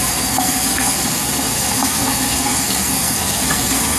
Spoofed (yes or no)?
yes